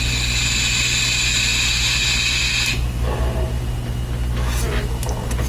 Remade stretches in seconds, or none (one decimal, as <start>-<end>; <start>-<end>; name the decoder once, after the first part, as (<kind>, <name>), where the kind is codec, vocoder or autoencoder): none